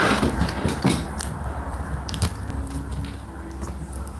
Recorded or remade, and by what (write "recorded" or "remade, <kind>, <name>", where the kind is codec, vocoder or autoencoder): remade, vocoder, BigVGAN v2